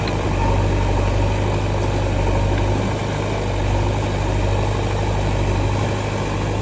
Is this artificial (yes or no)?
no